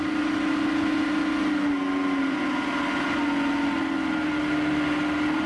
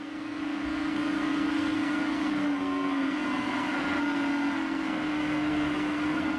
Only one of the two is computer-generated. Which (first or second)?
second